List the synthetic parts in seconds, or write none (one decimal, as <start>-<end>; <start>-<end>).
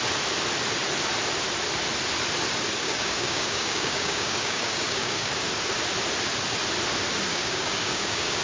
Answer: 2.8-5.3; 7.3-8.4